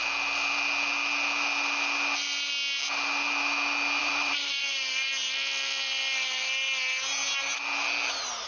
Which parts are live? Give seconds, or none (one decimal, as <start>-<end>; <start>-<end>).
0.0-4.0; 5.1-8.5